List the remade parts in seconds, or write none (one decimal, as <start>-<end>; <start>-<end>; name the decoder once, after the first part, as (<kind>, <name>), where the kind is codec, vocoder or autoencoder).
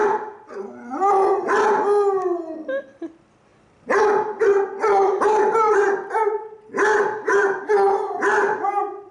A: 0.0-0.7 (vocoder, BigVGAN v2); 3.5-7.7